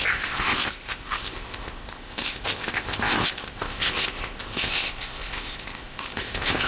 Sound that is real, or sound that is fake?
fake